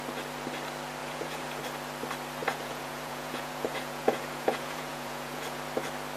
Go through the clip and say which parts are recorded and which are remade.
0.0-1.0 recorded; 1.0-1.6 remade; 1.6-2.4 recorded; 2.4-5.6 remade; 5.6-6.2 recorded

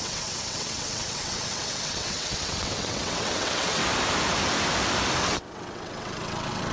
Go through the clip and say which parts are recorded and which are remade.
0.0-3.8 remade; 3.8-5.2 recorded; 5.2-6.7 remade

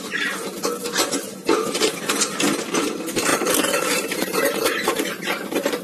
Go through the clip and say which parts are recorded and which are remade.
0.0-3.3 recorded; 3.3-5.8 remade

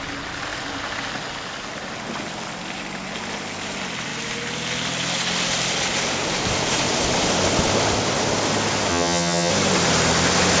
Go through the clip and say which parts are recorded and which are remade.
0.0-8.9 recorded; 8.9-9.5 remade; 9.5-10.6 recorded

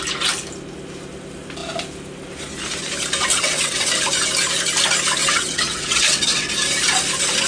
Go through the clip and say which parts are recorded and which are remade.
0.0-3.3 recorded; 3.3-3.9 remade; 3.9-5.2 recorded; 5.2-6.5 remade; 6.5-7.5 recorded